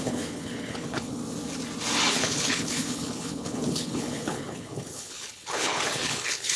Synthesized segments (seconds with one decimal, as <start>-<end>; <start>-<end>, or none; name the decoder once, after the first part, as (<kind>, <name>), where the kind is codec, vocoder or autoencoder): 0.0-1.2 (codec, HILCodec); 2.1-6.6